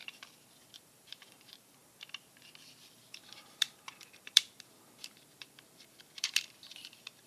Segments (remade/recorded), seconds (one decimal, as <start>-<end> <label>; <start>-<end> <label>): 0.0-7.3 remade